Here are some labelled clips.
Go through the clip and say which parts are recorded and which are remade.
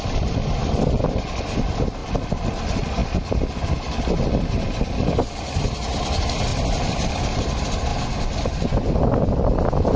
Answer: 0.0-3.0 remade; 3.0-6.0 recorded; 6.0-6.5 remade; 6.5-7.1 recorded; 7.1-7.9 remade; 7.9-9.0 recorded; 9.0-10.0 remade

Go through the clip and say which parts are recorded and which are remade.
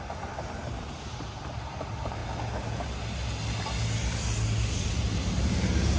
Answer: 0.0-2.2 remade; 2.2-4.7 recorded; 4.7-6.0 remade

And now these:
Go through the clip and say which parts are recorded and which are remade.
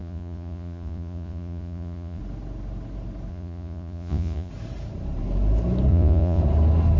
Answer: 0.0-2.2 remade; 2.2-3.3 recorded; 3.3-4.5 remade; 4.5-5.9 recorded; 5.9-6.4 remade; 6.4-7.0 recorded